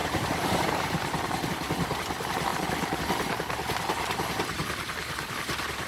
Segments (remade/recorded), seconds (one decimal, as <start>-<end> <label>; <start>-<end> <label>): 0.0-1.5 remade; 1.5-2.5 recorded; 2.5-3.0 remade; 3.0-5.9 recorded